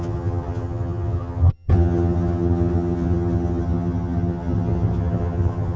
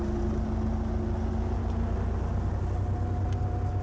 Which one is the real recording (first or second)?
second